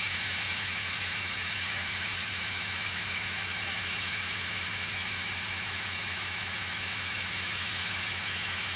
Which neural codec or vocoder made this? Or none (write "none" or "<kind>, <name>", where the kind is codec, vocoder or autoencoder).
autoencoder, DAC-VAE